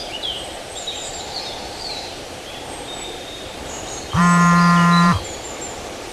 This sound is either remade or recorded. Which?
remade